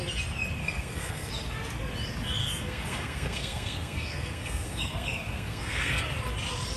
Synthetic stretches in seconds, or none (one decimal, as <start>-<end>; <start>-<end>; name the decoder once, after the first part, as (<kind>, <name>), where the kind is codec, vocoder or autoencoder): 0.6-1.3 (codec, SNAC); 2.4-6.0